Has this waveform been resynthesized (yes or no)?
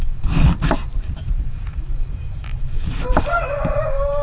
yes